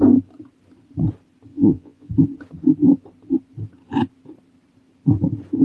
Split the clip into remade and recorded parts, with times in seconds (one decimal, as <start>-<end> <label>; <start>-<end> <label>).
0.0-1.5 recorded; 1.5-2.1 remade; 2.1-5.6 recorded